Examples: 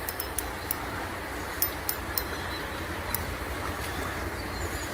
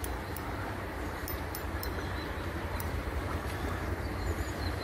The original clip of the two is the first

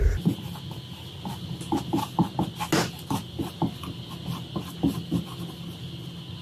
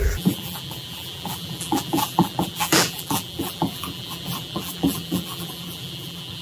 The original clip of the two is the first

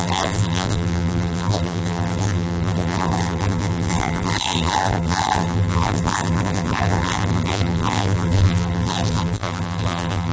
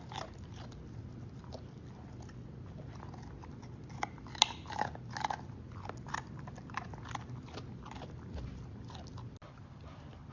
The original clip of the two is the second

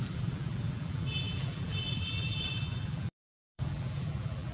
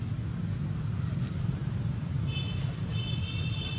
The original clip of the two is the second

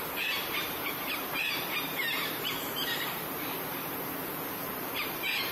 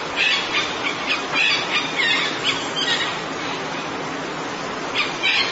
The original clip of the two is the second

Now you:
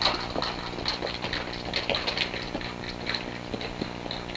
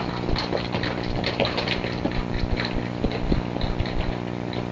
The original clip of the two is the first